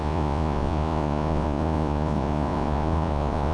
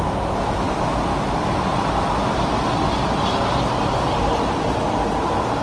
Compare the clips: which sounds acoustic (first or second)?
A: second